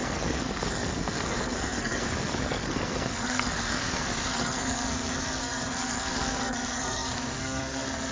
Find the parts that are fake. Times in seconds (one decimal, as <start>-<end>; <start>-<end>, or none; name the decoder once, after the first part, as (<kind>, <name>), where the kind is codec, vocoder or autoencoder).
0.0-8.1 (codec, SNAC)